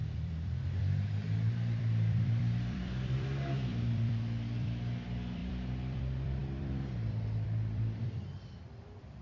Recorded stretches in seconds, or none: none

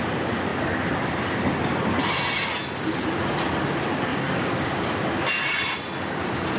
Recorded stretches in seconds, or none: 0.0-4.1; 4.7-6.6

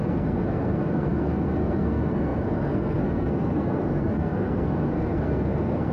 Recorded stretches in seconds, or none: none

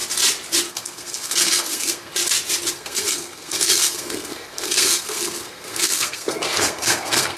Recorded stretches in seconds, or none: 0.0-0.7; 2.1-2.7

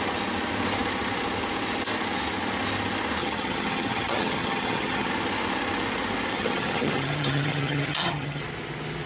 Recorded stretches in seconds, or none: 0.0-3.2; 5.1-6.3; 8.4-9.1

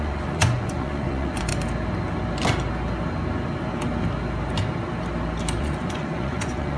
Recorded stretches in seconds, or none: 1.5-5.6

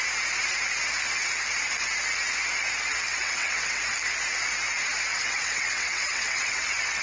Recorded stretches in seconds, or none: 0.0-3.1; 3.8-5.1